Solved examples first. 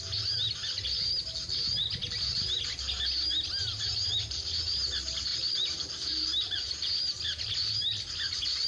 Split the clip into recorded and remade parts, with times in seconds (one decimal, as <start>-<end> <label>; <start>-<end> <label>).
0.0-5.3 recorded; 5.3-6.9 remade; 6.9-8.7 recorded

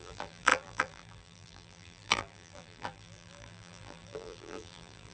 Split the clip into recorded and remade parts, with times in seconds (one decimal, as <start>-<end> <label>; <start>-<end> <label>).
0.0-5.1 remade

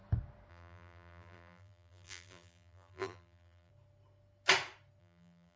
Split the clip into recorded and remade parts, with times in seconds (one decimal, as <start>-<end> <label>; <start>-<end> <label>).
0.0-0.5 recorded; 0.5-3.7 remade; 3.7-5.0 recorded; 5.0-5.6 remade

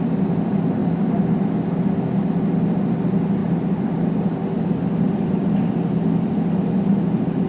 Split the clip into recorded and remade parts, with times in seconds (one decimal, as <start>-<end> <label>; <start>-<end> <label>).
0.0-7.5 recorded

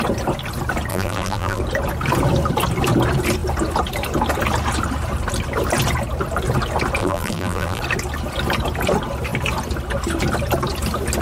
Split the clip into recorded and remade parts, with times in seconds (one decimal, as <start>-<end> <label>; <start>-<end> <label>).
0.0-0.9 recorded; 0.9-1.6 remade; 1.6-7.0 recorded; 7.0-7.8 remade; 7.8-11.2 recorded